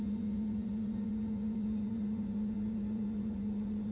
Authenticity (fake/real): fake